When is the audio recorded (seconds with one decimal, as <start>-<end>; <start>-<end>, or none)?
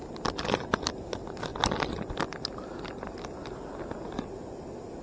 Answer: 0.0-5.0